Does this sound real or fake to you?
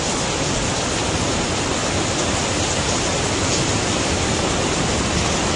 real